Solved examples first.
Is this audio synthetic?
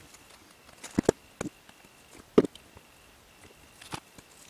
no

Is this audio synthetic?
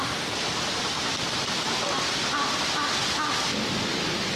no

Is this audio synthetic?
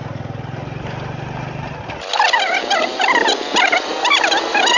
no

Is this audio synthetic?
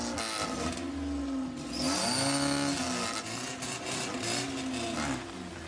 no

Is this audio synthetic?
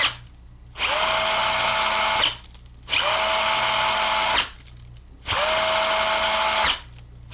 no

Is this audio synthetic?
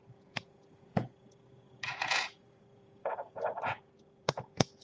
yes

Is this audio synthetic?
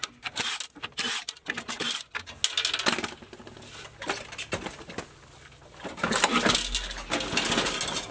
no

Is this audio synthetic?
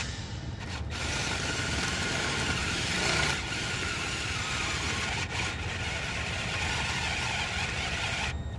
yes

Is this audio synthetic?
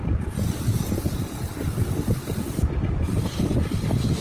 no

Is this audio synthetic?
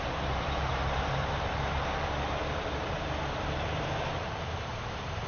yes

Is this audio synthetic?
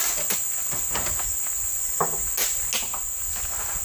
no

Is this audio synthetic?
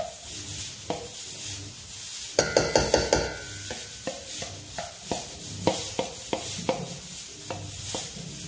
no